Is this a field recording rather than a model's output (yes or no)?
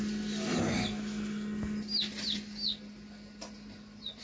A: yes